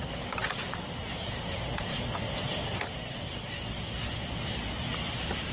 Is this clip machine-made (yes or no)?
no